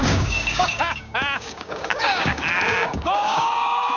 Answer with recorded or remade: remade